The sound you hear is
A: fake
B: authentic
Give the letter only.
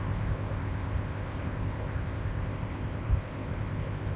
A